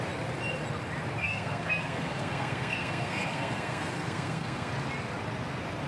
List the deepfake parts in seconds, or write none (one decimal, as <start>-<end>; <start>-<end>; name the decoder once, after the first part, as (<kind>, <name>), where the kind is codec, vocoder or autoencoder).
1.2-4.7 (codec, SNAC)